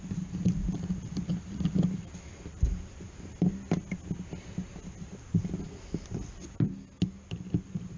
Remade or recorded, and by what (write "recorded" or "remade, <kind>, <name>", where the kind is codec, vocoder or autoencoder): recorded